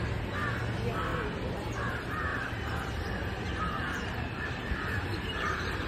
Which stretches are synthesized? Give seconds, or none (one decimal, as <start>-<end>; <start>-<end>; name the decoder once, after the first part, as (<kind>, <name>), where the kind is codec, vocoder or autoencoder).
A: 2.3-5.9 (vocoder, BigVGAN v2)